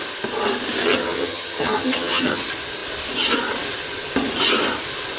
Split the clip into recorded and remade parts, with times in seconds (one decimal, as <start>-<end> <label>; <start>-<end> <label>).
0.0-0.8 recorded; 0.8-2.4 remade; 2.4-5.2 recorded

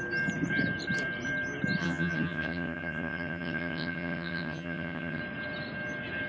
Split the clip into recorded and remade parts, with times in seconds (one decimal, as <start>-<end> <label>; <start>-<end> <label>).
0.0-1.8 recorded; 1.8-5.2 remade; 5.2-6.3 recorded